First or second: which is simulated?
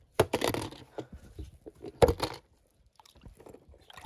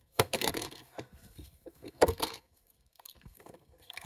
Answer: second